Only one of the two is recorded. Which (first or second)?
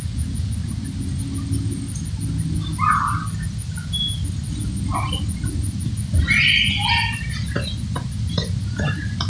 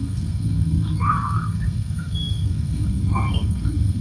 first